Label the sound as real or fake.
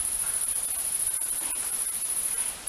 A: real